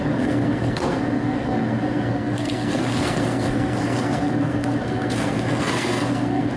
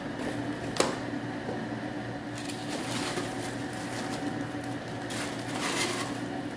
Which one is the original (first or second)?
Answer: second